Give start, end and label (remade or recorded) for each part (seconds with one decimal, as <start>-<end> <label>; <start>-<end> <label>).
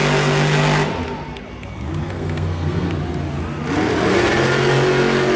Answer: 0.0-2.0 recorded; 2.0-2.9 remade; 2.9-5.4 recorded